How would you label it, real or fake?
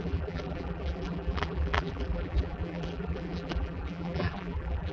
fake